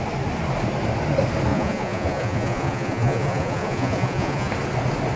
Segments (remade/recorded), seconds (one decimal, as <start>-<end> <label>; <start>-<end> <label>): 0.0-1.5 recorded; 1.5-4.5 remade; 4.5-5.2 recorded